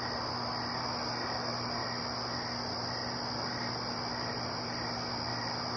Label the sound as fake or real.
real